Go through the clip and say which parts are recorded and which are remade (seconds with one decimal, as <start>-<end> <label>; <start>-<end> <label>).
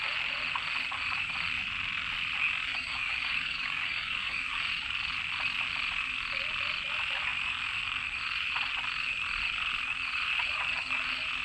0.0-2.7 recorded; 2.7-4.6 remade; 4.6-11.4 recorded